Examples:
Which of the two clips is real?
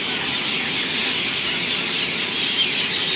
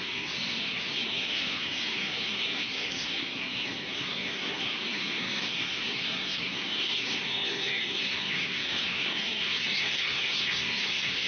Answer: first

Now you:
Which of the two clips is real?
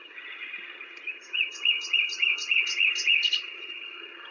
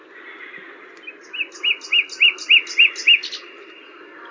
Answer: second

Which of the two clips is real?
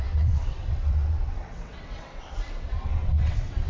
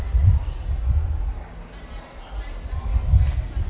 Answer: second